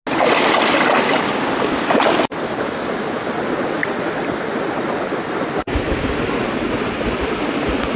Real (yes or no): yes